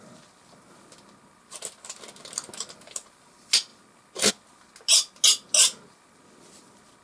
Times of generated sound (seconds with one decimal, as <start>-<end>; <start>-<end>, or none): none